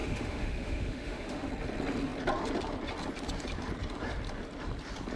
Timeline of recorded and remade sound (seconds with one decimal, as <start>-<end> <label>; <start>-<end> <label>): 0.0-1.5 remade; 1.5-5.2 recorded